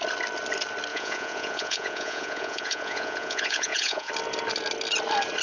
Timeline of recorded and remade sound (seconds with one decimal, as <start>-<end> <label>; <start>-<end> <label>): 0.0-0.9 recorded; 0.9-4.1 remade; 4.1-5.4 recorded